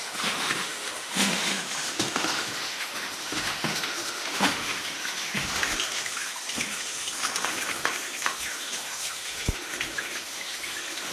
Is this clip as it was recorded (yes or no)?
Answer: no